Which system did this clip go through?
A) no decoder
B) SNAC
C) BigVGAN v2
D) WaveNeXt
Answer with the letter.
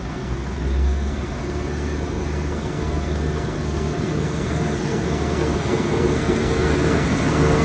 B